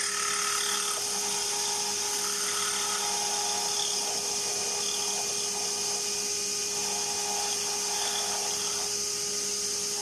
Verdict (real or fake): real